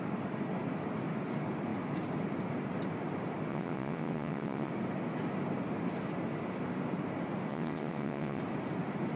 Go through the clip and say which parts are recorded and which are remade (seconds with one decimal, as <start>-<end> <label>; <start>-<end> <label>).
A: 0.0-3.5 recorded; 3.5-4.7 remade; 4.7-7.5 recorded; 7.5-8.4 remade; 8.4-9.2 recorded